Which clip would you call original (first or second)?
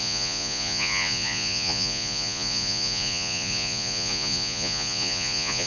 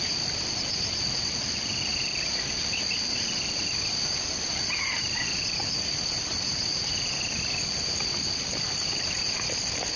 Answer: second